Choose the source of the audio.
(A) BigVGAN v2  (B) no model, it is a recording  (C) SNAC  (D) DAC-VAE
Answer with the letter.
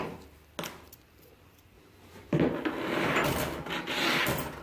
B